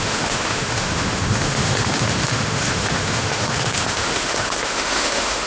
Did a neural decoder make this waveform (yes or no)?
yes